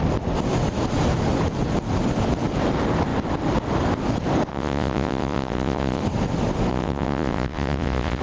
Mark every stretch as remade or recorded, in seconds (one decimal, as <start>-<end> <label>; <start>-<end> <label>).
0.0-4.5 recorded; 4.5-6.0 remade; 6.0-6.7 recorded; 6.7-8.2 remade